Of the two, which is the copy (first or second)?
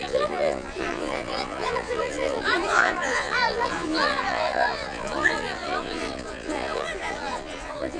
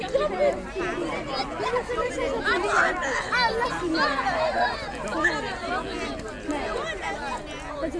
first